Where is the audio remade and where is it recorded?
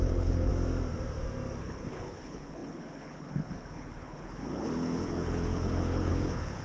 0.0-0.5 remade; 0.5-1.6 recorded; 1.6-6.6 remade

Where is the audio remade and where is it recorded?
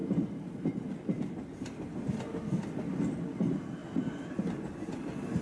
0.0-5.4 recorded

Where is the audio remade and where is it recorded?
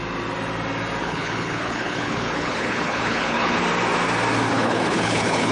0.0-1.0 recorded; 1.0-3.6 remade; 3.6-4.5 recorded; 4.5-5.5 remade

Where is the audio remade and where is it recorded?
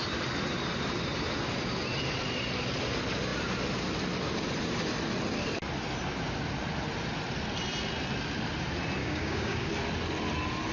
0.0-9.0 recorded; 9.0-9.7 remade; 9.7-10.7 recorded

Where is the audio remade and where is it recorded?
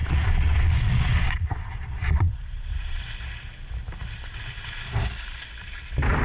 0.0-3.0 remade; 3.0-6.2 recorded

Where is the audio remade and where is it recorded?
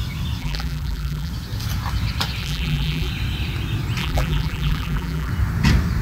0.0-0.4 recorded; 0.4-1.3 remade; 1.3-2.4 recorded; 2.4-3.1 remade; 3.1-4.0 recorded; 4.0-5.3 remade; 5.3-6.0 recorded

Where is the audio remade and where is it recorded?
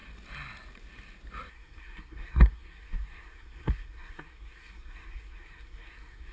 0.0-1.5 recorded; 1.5-6.3 remade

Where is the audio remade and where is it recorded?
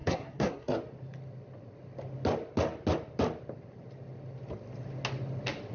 0.0-0.8 remade; 0.8-5.7 recorded